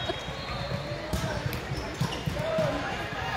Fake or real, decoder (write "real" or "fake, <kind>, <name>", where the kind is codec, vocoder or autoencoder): fake, vocoder, BigVGAN v2